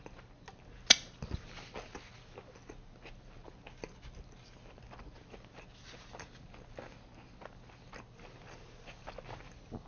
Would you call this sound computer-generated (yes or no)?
no